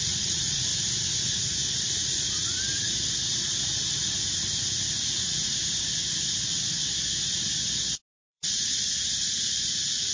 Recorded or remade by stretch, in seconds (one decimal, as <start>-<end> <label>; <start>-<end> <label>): 0.0-0.7 remade; 0.7-1.7 recorded; 1.7-2.6 remade; 2.6-4.9 recorded; 4.9-5.6 remade; 5.6-8.3 recorded; 8.3-10.1 remade